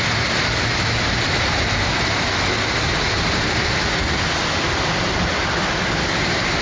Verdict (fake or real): real